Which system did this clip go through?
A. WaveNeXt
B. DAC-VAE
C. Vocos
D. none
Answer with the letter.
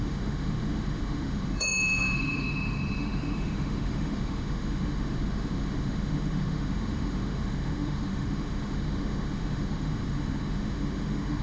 B